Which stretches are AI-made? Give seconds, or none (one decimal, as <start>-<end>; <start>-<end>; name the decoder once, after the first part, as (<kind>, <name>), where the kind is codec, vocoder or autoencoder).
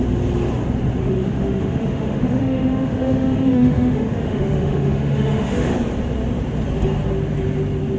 1.0-5.7 (autoencoder, DAC-VAE)